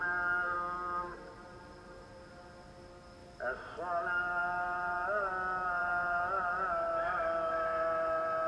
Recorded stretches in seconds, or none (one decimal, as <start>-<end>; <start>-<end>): 0.0-1.1; 2.3-4.4; 5.3-5.8; 7.2-8.5